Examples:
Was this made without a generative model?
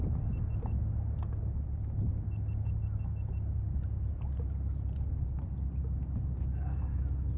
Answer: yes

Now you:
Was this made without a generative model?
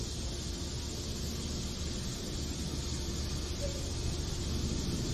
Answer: yes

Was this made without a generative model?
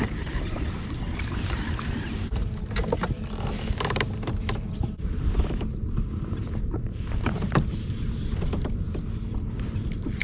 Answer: no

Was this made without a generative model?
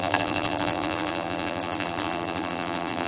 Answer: no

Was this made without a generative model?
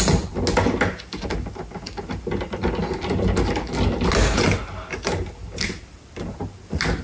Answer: yes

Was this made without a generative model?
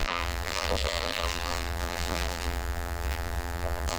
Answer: no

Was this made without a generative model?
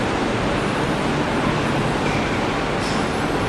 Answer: yes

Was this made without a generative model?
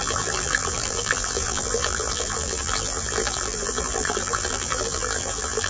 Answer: no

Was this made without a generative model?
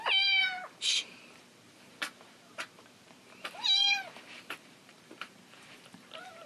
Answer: no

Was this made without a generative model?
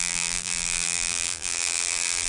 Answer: no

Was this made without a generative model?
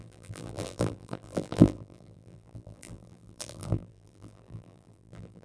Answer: no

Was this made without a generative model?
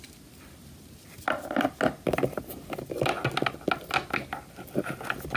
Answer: yes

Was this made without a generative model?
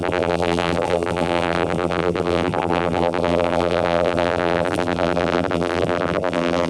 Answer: no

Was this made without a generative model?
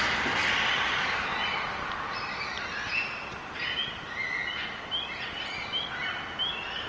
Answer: yes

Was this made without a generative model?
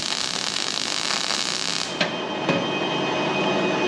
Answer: yes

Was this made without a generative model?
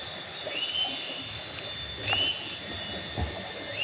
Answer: yes